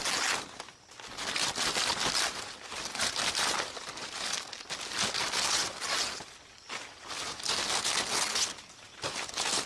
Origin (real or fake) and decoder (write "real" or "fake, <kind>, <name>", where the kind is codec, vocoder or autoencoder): real